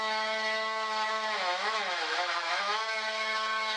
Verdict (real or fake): fake